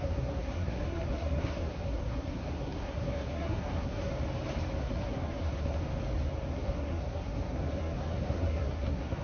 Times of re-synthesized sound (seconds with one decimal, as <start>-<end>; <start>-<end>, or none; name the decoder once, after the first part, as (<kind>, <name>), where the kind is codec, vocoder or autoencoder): 0.0-4.1 (codec, SNAC); 4.8-5.8; 6.5-9.2